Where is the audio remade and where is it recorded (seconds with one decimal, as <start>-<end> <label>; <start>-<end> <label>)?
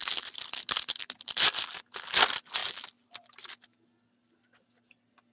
0.0-5.3 recorded